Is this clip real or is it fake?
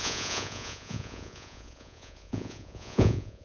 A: fake